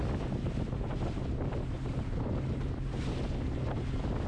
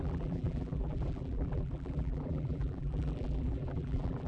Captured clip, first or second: first